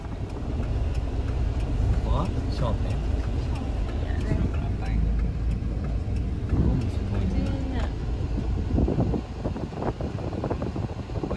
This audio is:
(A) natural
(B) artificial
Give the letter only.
A